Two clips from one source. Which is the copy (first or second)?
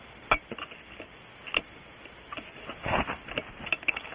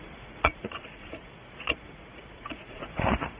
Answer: second